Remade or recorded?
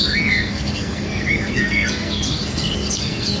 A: remade